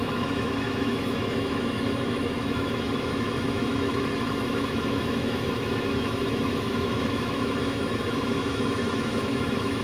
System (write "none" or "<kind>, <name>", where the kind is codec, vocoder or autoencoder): autoencoder, DAC-VAE